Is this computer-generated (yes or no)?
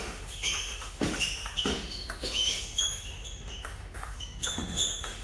yes